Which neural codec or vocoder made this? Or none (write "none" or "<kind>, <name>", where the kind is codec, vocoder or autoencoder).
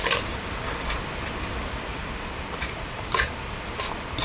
none